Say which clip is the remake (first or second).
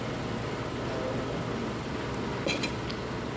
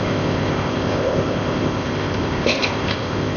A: second